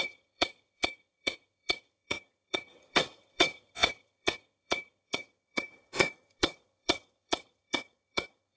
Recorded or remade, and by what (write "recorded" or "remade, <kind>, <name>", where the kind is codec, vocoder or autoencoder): remade, vocoder, HiFi-GAN